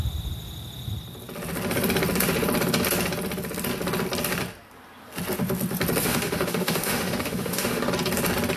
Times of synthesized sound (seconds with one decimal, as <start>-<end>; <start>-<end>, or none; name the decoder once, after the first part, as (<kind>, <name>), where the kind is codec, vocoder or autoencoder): 6.0-7.9 (autoencoder, DAC-VAE)